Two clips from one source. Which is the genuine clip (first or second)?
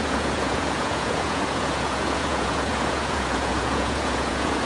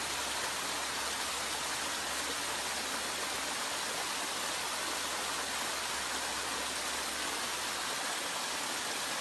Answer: second